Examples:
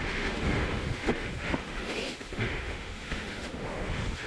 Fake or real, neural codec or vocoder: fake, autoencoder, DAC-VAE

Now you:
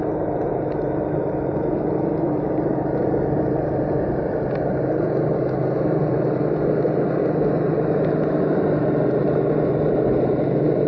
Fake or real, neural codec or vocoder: real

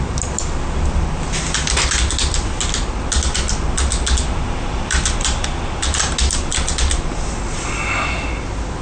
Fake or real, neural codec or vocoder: real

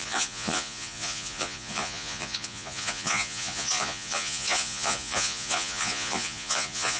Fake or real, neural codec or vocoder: fake, vocoder, Vocos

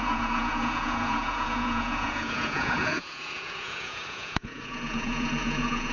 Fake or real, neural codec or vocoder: fake, vocoder, Vocos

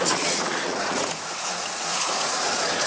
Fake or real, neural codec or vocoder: fake, vocoder, Vocos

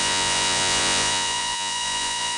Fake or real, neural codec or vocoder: fake, vocoder, Vocos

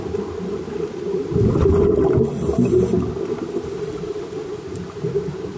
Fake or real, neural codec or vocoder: real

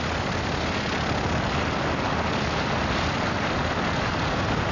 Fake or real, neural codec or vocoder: real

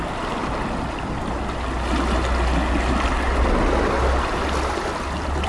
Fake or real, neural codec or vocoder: real